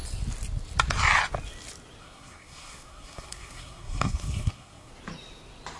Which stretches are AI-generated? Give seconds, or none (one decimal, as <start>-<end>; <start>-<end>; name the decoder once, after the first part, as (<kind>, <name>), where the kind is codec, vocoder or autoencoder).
2.0-4.9 (codec, SNAC)